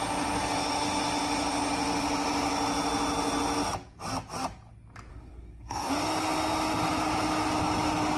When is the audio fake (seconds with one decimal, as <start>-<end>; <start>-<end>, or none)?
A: 5.1-5.9

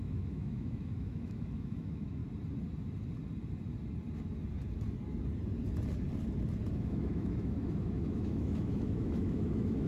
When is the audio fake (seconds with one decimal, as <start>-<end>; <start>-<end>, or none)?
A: 0.0-2.2; 6.7-9.9

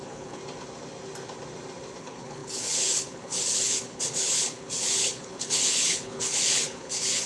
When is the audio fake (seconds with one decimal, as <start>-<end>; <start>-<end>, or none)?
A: 0.0-0.4; 2.0-7.3

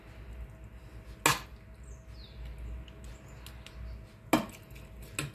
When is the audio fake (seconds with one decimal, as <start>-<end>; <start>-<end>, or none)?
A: none

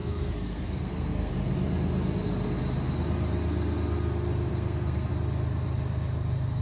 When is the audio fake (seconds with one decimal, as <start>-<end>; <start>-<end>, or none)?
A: 0.0-1.3; 4.5-5.1

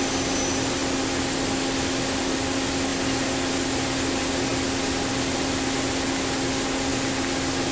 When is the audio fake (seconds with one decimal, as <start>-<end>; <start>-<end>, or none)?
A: none

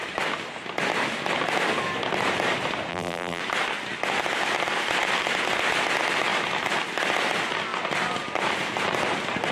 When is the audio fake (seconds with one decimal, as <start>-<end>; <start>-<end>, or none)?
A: 2.9-3.4

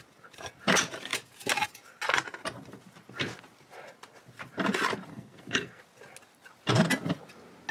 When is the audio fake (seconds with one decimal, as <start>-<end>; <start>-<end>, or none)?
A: 5.1-5.8